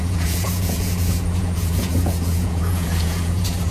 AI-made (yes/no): yes